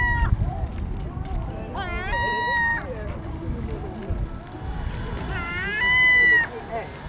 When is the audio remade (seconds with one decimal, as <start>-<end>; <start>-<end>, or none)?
none